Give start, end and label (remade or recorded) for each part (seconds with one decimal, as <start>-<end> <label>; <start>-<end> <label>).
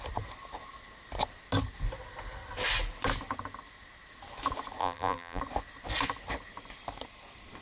0.0-4.8 recorded; 4.8-5.4 remade; 5.4-7.6 recorded